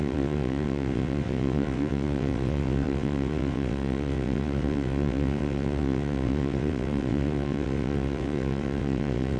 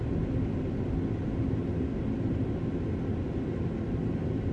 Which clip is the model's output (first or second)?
first